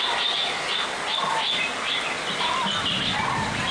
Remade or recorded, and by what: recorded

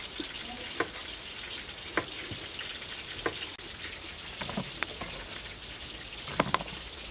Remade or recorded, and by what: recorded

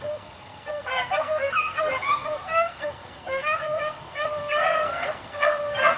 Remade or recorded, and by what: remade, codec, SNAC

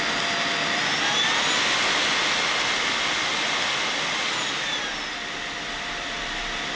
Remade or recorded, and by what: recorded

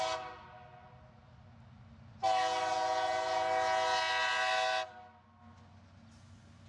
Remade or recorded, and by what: recorded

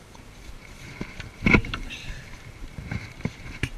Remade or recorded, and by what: remade, vocoder, BigVGAN v2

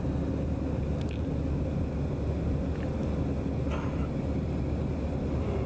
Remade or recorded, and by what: recorded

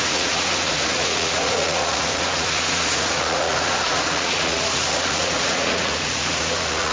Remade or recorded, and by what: remade, vocoder, Vocos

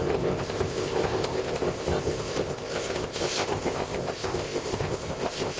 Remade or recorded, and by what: remade, codec, ZipCodec